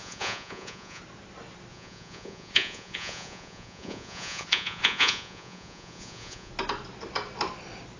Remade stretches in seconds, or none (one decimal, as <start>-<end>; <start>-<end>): 0.0-1.0; 1.7-6.5